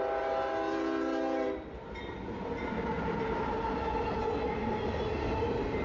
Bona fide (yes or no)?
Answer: yes